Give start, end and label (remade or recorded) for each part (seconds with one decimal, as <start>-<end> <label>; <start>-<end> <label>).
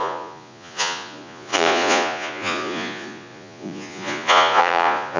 0.0-5.2 remade